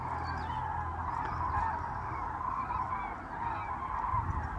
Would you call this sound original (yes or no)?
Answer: yes